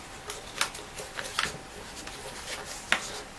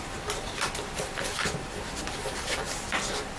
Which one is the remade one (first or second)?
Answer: second